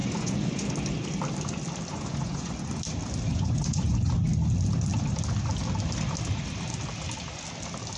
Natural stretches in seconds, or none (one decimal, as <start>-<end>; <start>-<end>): 0.7-1.9; 2.5-3.3; 4.1-8.0